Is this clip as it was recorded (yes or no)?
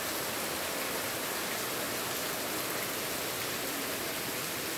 yes